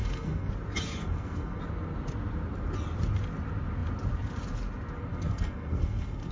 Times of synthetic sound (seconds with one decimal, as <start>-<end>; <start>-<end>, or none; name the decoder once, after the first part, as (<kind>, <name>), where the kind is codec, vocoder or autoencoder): 0.0-0.5 (codec, SNAC); 1.0-1.6; 5.1-6.3